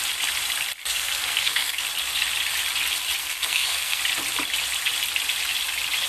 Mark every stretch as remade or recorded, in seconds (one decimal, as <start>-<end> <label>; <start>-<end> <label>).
0.0-0.8 recorded; 0.8-1.8 remade; 1.8-3.2 recorded; 3.2-4.0 remade; 4.0-6.1 recorded